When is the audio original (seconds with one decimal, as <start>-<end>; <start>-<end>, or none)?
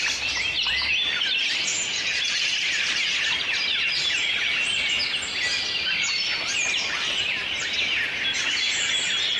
0.0-1.7; 2.5-9.4